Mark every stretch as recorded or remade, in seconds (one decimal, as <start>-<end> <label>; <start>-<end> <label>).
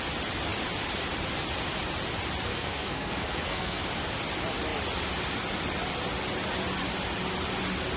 0.0-2.5 recorded; 2.5-3.8 remade; 3.8-8.0 recorded